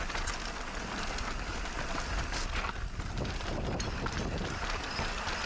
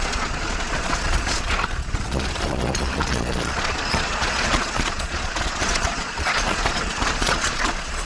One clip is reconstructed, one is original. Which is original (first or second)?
first